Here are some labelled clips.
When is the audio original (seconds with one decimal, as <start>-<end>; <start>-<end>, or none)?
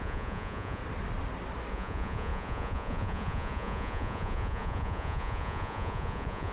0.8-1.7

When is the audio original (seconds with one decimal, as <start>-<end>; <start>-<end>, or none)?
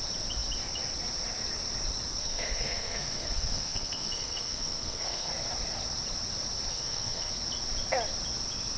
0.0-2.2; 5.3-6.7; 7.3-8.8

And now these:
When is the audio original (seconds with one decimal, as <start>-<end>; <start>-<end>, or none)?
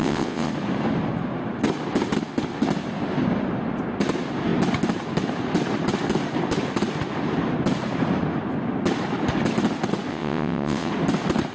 0.5-10.1; 10.9-11.5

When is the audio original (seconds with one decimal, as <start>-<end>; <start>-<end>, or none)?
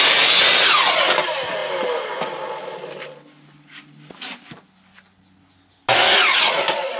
0.0-7.0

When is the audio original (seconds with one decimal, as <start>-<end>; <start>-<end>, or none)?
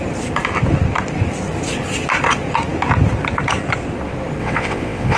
0.0-4.4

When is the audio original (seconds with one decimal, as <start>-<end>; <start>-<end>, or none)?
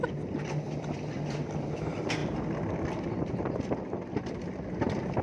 0.0-5.2